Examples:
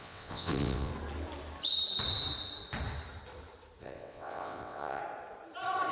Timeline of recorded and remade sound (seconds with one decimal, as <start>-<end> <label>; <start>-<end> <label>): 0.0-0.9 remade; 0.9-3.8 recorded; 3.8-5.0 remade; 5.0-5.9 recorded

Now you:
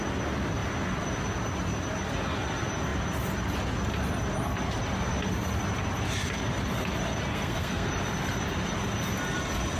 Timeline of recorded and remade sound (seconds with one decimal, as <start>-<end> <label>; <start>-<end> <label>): 0.0-7.3 recorded; 7.3-7.9 remade; 7.9-9.8 recorded

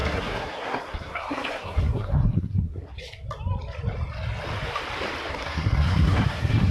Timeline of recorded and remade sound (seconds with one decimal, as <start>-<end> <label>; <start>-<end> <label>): 0.0-3.0 remade; 3.0-5.3 recorded; 5.3-6.7 remade